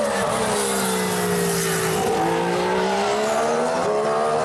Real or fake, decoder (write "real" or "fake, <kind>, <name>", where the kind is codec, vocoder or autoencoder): real